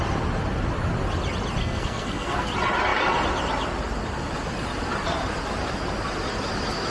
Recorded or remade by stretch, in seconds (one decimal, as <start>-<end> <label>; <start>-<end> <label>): 0.0-1.6 recorded; 1.6-2.5 remade; 2.5-6.9 recorded